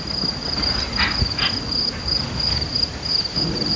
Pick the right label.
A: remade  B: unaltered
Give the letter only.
B